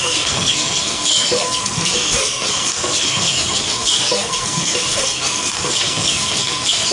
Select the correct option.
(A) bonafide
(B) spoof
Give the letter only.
B